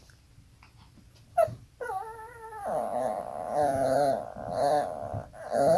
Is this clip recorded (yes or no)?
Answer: no